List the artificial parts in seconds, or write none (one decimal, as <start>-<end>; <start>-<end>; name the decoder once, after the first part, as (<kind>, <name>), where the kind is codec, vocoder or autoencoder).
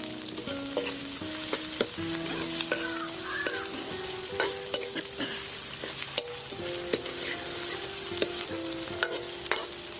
none